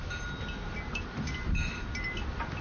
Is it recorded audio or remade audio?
recorded